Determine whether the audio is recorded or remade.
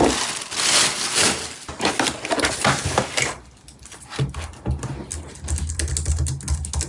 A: recorded